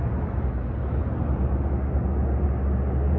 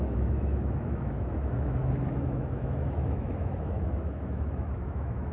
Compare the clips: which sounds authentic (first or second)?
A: first